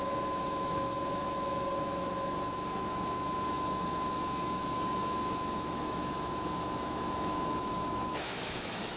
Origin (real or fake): fake